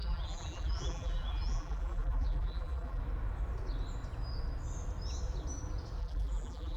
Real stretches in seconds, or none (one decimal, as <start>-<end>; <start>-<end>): 3.0-6.0